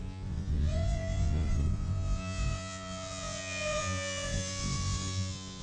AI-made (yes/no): yes